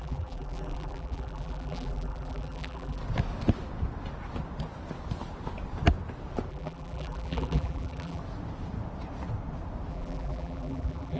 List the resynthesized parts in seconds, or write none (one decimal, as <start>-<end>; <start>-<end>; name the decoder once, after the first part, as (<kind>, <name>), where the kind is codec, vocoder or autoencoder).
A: 0.0-3.0 (vocoder, BigVGAN v2); 6.5-8.2; 9.9-11.2